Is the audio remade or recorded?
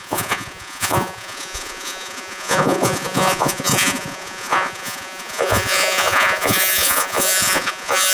remade